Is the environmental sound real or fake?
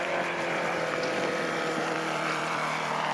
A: fake